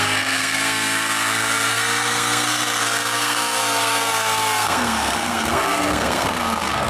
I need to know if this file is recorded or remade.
remade